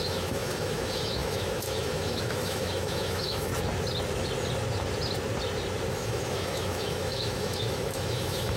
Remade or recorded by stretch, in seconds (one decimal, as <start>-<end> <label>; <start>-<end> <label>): 0.0-3.5 remade; 3.5-5.9 recorded; 5.9-8.6 remade